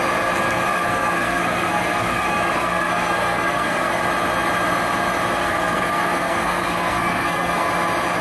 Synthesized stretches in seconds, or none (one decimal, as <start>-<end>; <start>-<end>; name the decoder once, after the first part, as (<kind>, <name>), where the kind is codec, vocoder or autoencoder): 0.7-4.0 (codec, SNAC); 5.4-7.7